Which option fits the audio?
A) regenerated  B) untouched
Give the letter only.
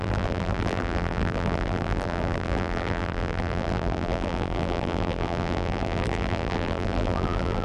A